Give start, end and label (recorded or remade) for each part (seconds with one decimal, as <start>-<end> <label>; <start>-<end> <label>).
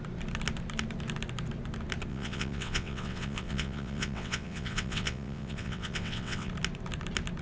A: 0.0-2.1 recorded; 2.1-6.5 remade; 6.5-7.4 recorded